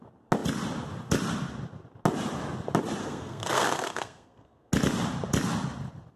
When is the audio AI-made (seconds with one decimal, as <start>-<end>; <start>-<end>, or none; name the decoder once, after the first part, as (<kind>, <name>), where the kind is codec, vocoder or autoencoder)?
3.0-4.7 (codec, SNAC)